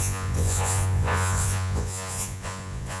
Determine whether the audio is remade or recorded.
remade